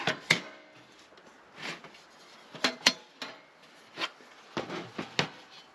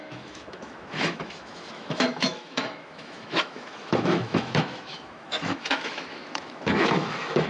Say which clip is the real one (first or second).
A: first